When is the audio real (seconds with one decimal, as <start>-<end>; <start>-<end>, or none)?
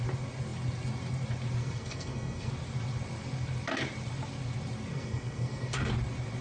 0.0-1.6; 2.5-4.9; 5.9-6.4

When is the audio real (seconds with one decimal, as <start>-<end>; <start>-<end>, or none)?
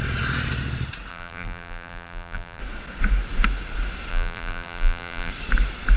0.0-1.1; 2.6-4.1; 5.3-6.0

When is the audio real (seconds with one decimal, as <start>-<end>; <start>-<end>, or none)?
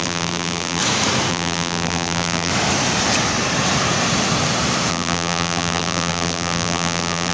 0.8-1.3; 2.5-4.9